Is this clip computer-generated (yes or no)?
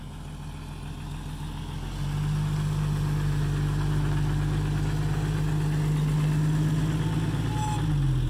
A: no